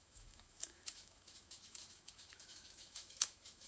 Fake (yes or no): yes